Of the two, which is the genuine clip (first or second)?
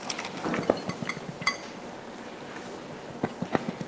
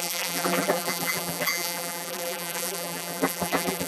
first